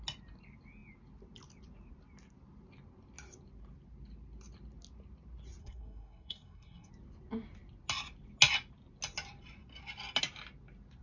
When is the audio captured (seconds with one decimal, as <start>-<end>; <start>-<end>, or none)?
0.0-5.6; 6.9-11.0